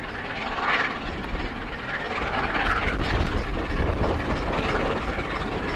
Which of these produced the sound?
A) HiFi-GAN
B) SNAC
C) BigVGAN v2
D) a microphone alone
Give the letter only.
D